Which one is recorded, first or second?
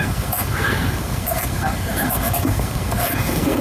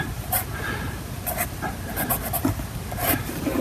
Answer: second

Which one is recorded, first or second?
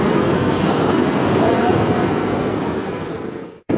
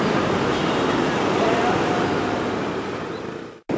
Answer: second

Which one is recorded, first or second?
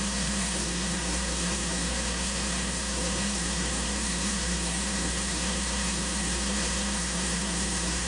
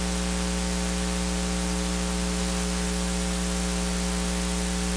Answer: second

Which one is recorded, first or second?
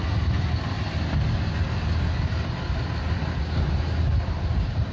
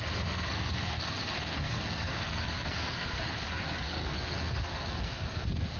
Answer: first